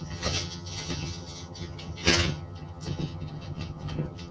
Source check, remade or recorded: remade